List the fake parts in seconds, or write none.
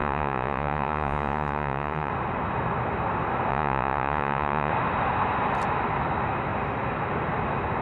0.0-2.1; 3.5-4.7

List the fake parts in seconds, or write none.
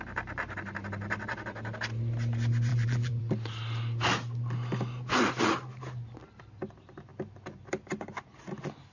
2.7-3.2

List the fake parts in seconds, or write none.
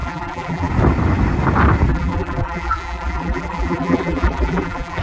0.0-0.7; 1.9-5.0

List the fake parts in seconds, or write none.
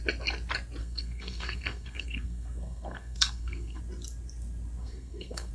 0.8-3.8; 4.8-5.5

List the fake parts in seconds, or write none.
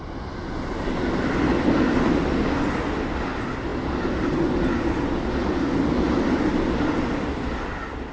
none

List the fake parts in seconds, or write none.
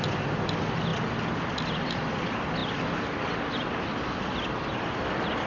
none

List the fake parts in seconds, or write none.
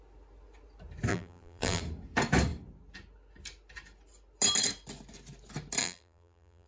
1.1-1.8; 5.8-6.7